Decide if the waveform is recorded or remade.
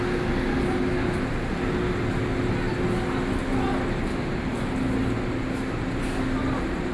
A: recorded